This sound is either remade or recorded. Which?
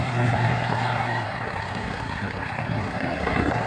remade